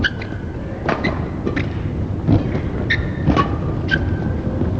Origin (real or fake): real